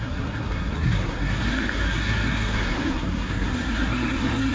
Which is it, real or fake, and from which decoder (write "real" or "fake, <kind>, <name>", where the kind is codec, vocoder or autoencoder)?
fake, codec, SNAC